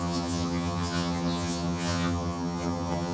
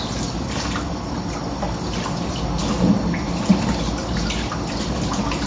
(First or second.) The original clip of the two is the second